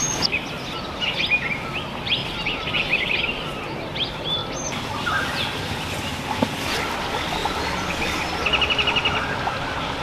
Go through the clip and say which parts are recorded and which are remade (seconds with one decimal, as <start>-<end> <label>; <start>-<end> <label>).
0.0-2.2 recorded; 2.2-3.2 remade; 3.2-5.5 recorded; 5.5-6.9 remade; 6.9-7.4 recorded; 7.4-8.2 remade; 8.2-10.0 recorded